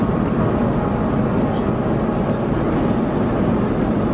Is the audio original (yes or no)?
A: yes